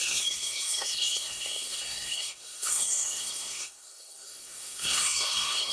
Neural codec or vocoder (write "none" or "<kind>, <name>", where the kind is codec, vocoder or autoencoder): codec, SNAC